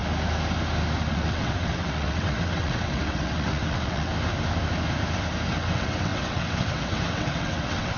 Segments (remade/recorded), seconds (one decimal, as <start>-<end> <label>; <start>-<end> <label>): 0.0-1.1 recorded; 1.1-4.1 remade; 4.1-5.5 recorded; 5.5-8.0 remade